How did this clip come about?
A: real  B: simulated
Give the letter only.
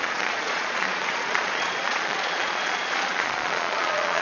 B